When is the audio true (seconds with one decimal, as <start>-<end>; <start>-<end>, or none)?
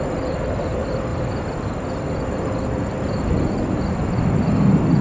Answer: 0.0-5.0